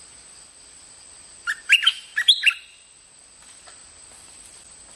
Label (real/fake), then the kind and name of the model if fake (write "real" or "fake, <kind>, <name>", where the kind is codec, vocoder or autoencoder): fake, vocoder, BigVGAN v2